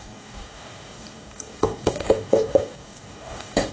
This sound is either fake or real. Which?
fake